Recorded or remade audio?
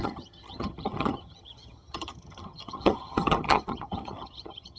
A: remade